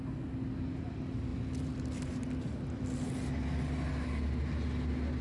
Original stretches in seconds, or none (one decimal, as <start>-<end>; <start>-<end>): 0.0-5.2

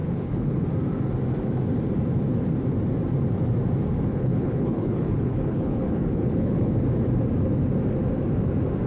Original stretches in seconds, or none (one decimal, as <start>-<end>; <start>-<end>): 0.6-4.1; 6.7-8.9